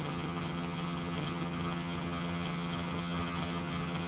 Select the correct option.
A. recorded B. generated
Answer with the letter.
B